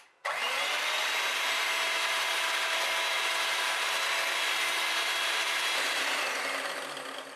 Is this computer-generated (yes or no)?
no